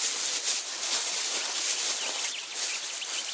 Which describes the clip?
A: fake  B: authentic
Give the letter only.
B